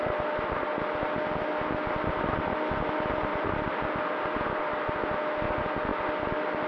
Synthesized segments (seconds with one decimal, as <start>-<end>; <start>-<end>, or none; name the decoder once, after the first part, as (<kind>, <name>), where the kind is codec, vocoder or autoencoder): 3.3-4.6 (vocoder, BigVGAN v2)

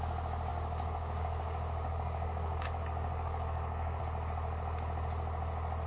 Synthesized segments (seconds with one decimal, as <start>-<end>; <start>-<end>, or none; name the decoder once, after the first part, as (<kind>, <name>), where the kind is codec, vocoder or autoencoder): 0.5-4.0 (codec, DAC)

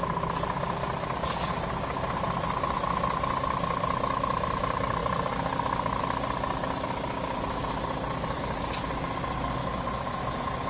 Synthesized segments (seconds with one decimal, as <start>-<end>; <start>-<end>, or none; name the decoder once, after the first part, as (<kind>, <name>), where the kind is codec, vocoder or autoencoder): 9.6-10.7 (autoencoder, DAC-VAE)

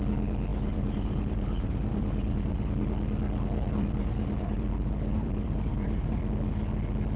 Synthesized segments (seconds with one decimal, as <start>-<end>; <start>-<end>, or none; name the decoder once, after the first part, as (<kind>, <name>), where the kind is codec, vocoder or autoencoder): 0.5-2.5 (vocoder, BigVGAN v2); 4.0-6.2

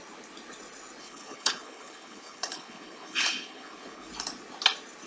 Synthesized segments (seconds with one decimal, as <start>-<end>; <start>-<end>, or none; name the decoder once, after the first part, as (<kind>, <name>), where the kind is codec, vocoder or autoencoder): 1.0-4.1 (codec, HILCodec)

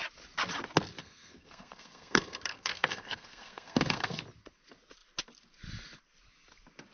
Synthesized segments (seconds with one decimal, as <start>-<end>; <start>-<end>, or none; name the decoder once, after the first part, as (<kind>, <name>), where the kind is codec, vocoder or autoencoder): 1.0-4.2 (codec, SNAC)

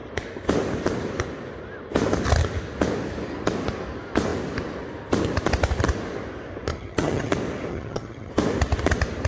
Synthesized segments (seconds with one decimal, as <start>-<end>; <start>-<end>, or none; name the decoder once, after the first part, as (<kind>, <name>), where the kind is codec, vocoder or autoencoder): 6.7-7.3 (vocoder, HiFi-GAN); 7.7-8.3

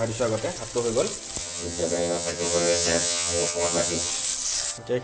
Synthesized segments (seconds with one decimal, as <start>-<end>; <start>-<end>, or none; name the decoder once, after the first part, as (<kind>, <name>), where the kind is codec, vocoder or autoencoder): 1.4-4.1 (vocoder, HiFi-GAN)